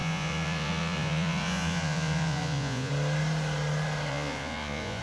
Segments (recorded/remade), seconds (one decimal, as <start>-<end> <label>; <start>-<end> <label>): 0.0-2.9 remade; 2.9-4.1 recorded; 4.1-5.0 remade